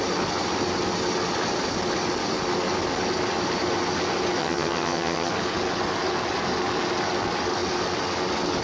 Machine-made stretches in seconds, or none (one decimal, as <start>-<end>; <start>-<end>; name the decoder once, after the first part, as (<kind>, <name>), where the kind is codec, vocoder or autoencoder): 4.4-5.3 (vocoder, HiFi-GAN)